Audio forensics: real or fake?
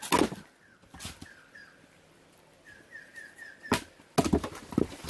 real